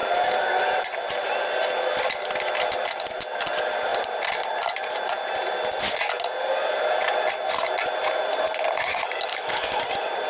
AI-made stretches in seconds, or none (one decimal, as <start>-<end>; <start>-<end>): 9.3-9.8